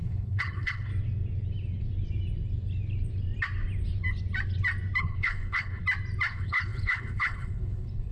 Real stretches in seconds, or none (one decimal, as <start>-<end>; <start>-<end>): 0.9-5.0; 5.8-6.3